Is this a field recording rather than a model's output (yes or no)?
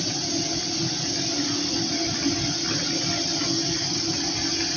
yes